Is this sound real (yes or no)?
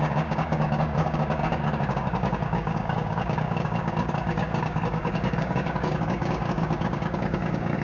no